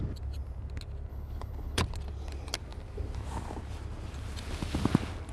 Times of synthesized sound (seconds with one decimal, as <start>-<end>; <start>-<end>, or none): 1.1-1.8